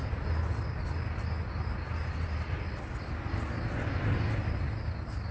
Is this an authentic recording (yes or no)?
yes